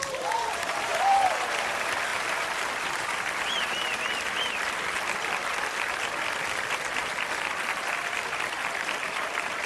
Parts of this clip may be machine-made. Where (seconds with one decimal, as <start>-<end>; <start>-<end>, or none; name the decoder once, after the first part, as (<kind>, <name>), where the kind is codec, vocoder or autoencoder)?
0.0-2.1 (vocoder, BigVGAN v2); 3.7-7.0; 7.6-9.7